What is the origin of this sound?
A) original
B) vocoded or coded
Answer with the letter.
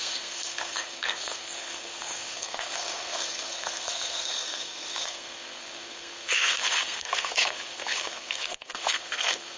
B